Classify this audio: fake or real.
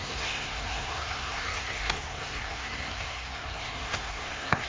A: fake